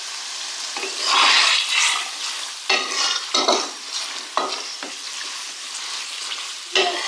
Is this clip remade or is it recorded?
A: recorded